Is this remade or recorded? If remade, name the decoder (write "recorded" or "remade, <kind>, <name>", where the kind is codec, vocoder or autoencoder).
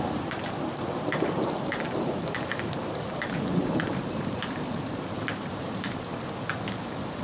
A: remade, vocoder, BigVGAN v2